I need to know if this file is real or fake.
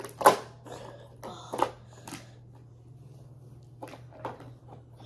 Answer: real